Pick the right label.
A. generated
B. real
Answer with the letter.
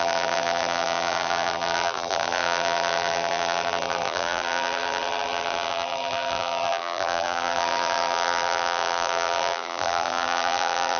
A